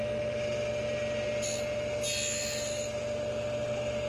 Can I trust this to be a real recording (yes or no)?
yes